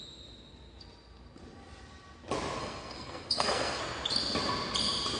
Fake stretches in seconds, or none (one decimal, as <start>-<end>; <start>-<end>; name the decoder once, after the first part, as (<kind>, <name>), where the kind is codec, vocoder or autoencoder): 2.6-3.8 (codec, SNAC)